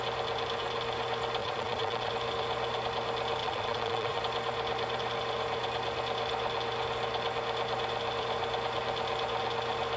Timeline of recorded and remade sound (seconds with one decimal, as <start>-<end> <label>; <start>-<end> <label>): 0.0-1.4 recorded; 1.4-2.1 remade; 2.1-3.4 recorded; 3.4-4.2 remade; 4.2-10.0 recorded